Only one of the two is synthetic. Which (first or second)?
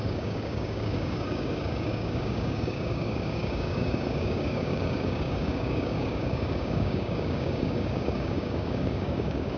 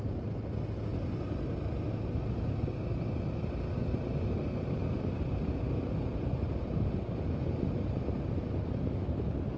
first